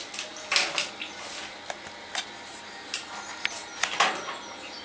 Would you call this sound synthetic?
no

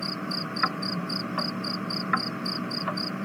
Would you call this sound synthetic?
yes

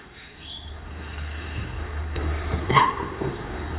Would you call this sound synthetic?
yes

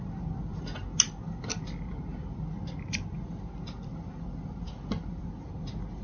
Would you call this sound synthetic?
no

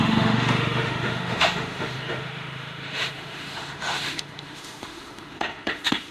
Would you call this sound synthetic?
yes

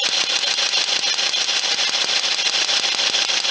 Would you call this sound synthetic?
no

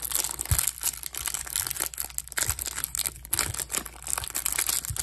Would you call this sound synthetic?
no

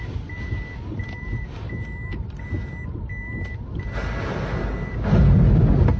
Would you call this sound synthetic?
no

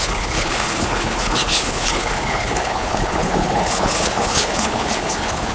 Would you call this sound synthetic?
yes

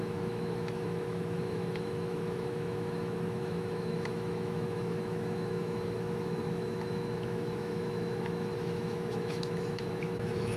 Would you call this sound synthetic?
yes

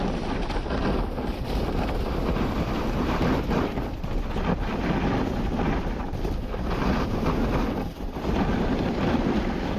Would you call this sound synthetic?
no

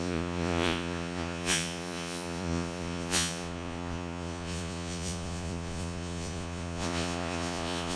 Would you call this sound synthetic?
yes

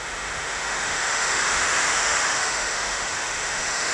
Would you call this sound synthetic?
yes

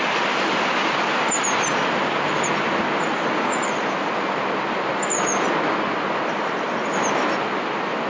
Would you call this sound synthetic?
no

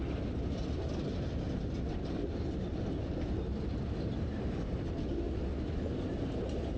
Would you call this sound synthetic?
no